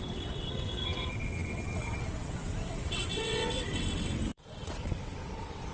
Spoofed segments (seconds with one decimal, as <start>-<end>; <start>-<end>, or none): 0.0-5.7